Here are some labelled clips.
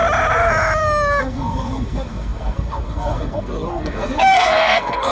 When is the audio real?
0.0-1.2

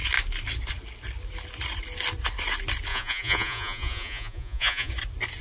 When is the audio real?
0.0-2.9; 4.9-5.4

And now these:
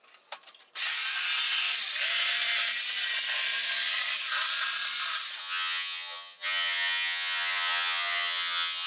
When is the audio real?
0.0-5.4

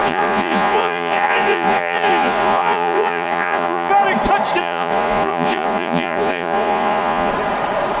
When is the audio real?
3.9-4.6; 7.3-8.0

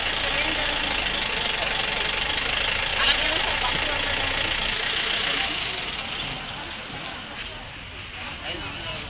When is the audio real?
0.0-4.6; 5.7-9.1

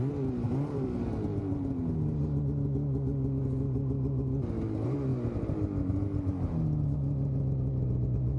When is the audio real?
0.0-8.4